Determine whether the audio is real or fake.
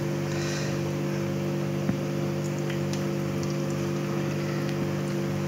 real